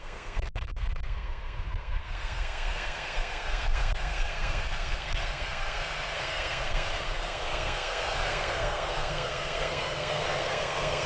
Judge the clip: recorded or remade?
remade